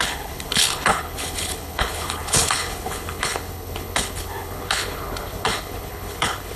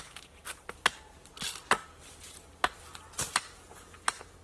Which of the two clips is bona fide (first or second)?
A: second